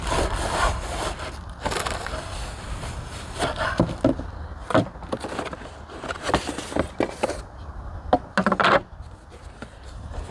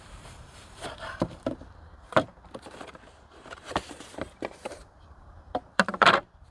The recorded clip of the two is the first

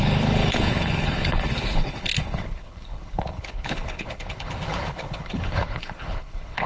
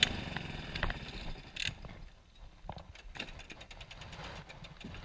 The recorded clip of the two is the second